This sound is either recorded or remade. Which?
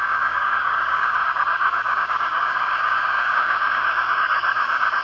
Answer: remade